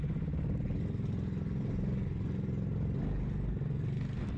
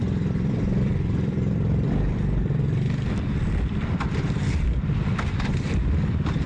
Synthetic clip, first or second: second